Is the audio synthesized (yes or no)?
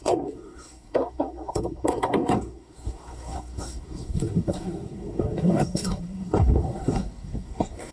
yes